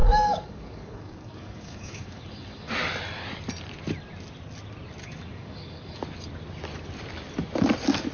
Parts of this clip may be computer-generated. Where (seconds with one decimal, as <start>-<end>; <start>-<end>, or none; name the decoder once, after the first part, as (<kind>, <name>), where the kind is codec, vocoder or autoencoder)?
0.0-2.7 (codec, DAC); 5.0-6.0

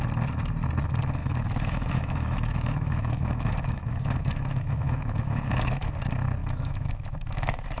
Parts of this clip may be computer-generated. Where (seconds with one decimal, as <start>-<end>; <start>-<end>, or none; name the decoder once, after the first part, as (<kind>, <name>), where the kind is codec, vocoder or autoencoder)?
1.2-5.9 (autoencoder, DAC-VAE); 6.4-7.8

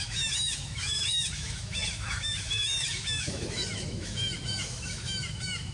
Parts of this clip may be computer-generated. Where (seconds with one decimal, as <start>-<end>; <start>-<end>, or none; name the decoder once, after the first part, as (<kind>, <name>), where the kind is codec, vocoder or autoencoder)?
0.0-5.7 (autoencoder, DAC-VAE)

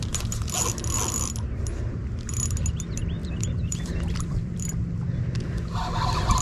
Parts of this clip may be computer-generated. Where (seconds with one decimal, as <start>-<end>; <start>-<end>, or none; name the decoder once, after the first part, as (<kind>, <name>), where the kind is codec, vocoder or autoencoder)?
3.2-4.8 (vocoder, BigVGAN v2)

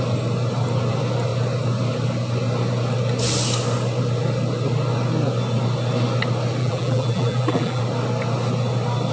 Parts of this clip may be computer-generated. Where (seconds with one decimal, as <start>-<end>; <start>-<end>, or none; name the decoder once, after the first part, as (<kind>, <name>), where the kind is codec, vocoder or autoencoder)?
6.6-7.8 (vocoder, BigVGAN v2)